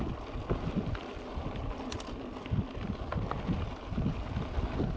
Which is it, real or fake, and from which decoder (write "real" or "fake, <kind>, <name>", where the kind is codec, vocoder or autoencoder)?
real